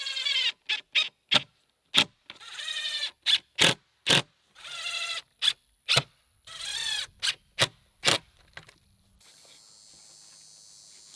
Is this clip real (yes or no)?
yes